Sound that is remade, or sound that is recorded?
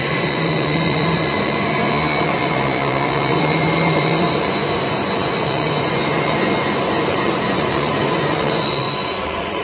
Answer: remade